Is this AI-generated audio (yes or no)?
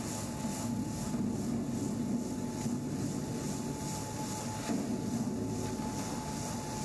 no